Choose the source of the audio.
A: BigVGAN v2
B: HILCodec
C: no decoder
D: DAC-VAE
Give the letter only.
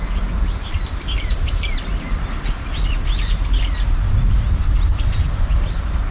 C